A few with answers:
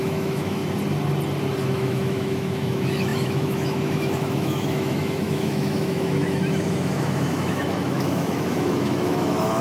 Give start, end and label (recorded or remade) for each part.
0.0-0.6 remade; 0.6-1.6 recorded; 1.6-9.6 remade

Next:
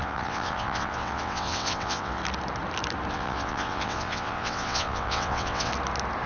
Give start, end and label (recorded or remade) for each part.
0.0-2.2 remade; 2.2-3.1 recorded; 3.1-5.7 remade; 5.7-6.3 recorded

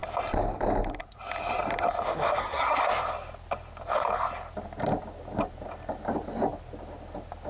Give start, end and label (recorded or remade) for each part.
0.0-2.4 recorded; 2.4-2.8 remade; 2.8-7.5 recorded

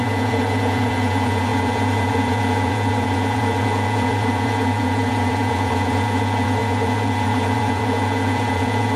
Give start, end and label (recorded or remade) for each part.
0.0-9.0 remade

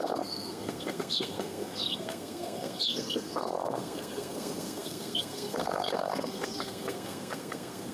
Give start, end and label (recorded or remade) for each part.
0.0-7.9 remade

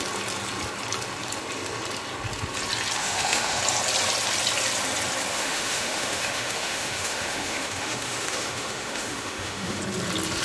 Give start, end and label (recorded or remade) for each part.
0.0-3.0 recorded; 3.0-3.6 remade; 3.6-5.3 recorded; 5.3-9.8 remade; 9.8-10.4 recorded

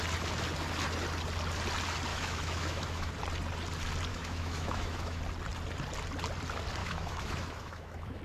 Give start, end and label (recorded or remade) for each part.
0.0-2.1 recorded; 2.1-3.1 remade; 3.1-4.1 recorded; 4.1-5.2 remade; 5.2-6.8 recorded; 6.8-8.2 remade